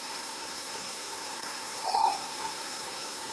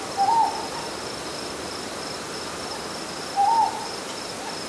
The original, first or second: second